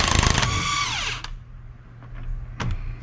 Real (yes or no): yes